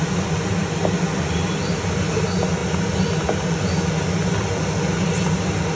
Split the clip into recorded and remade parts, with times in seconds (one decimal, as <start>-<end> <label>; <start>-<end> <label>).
0.0-5.8 recorded